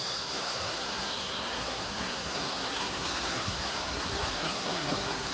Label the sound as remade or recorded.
remade